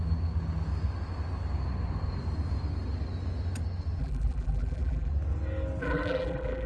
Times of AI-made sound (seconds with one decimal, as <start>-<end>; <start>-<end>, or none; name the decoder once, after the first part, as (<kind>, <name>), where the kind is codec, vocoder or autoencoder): 4.0-5.1 (vocoder, BigVGAN v2); 5.8-6.7